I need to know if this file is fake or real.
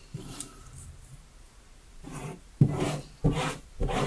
fake